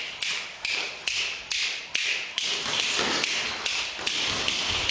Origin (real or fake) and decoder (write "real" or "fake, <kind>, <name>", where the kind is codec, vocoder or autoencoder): real